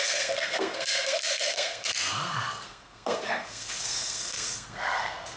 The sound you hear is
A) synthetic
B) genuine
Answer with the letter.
A